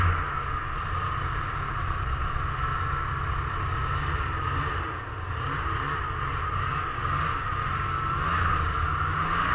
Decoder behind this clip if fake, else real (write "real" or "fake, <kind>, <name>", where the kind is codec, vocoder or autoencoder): real